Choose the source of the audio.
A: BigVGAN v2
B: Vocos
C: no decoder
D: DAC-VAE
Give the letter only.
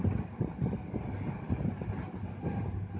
C